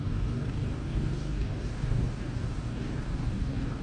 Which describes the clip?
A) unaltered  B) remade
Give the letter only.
B